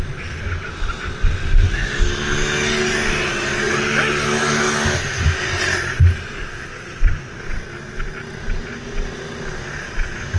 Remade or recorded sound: recorded